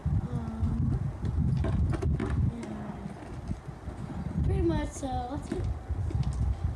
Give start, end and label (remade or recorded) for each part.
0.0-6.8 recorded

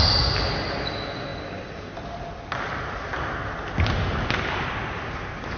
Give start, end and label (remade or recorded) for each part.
0.0-5.6 recorded

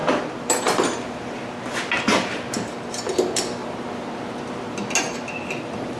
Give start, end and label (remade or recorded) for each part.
0.0-6.0 recorded

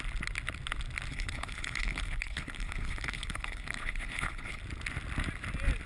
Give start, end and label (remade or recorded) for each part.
0.0-1.1 recorded; 1.1-4.6 remade; 4.6-5.9 recorded